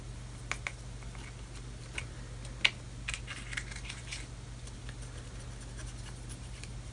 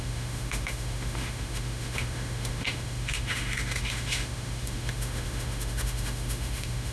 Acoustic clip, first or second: first